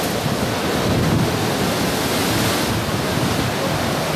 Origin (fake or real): real